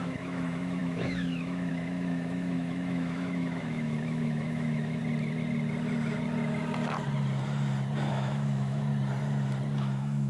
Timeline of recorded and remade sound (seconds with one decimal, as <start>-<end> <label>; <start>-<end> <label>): 0.0-5.0 remade; 5.0-8.1 recorded; 8.1-8.9 remade; 8.9-9.8 recorded; 9.8-10.3 remade